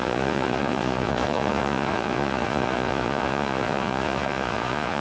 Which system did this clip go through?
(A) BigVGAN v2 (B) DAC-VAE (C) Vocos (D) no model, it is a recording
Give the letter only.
C